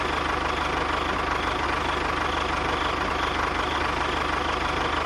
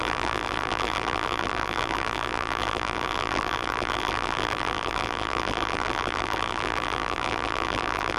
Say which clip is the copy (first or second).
second